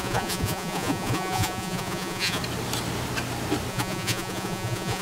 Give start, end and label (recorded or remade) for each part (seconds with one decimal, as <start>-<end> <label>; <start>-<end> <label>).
0.0-2.4 remade; 2.4-3.7 recorded; 3.7-5.0 remade

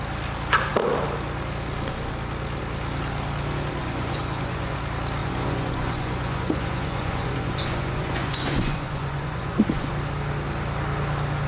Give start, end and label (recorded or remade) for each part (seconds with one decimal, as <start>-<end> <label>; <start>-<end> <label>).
0.0-3.8 recorded; 3.8-4.8 remade; 4.8-5.2 recorded; 5.2-9.9 remade; 9.9-11.5 recorded